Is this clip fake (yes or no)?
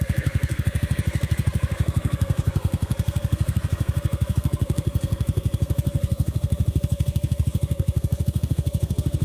yes